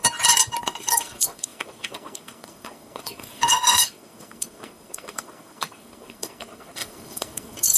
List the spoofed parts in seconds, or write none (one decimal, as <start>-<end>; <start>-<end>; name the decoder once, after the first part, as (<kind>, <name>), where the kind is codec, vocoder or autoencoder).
0.6-7.8 (codec, SNAC)